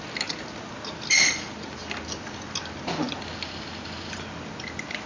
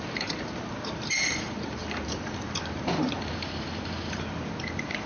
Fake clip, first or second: second